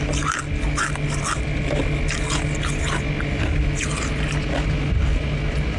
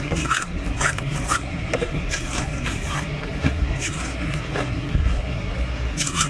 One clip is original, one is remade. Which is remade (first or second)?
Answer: second